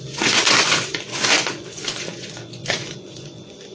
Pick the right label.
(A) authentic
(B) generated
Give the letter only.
B